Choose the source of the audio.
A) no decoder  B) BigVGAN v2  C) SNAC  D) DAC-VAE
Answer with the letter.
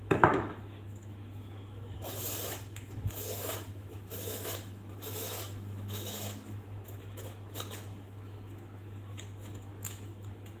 D